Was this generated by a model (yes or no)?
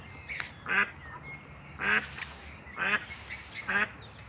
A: no